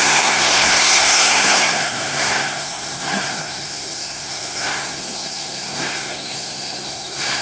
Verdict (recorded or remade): remade